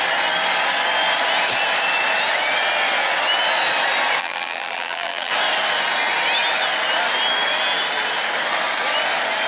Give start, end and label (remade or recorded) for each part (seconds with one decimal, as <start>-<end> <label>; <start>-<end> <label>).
0.0-4.2 recorded; 4.2-5.3 remade; 5.3-9.5 recorded